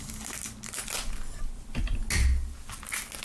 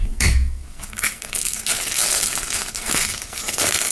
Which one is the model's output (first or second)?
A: second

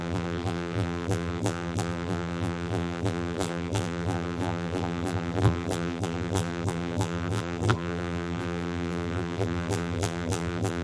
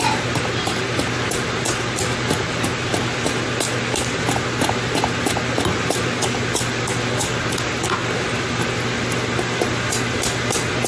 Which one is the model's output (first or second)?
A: first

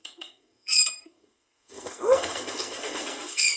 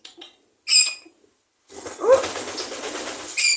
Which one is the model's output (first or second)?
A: first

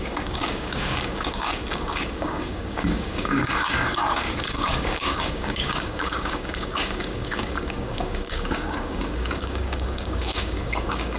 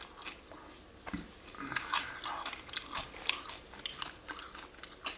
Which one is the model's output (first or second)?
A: first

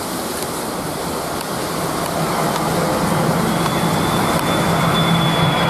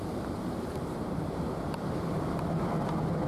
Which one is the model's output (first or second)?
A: second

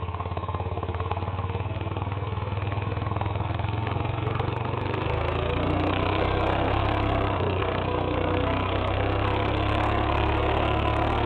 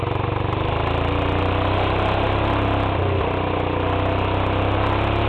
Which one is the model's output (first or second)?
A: first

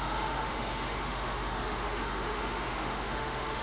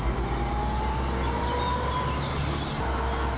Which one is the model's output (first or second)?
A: first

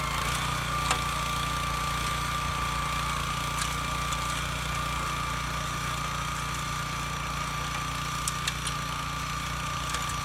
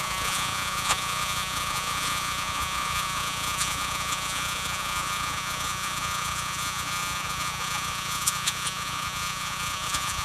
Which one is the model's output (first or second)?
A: second